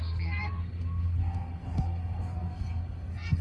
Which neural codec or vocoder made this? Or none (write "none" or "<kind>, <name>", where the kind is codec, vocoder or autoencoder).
codec, SNAC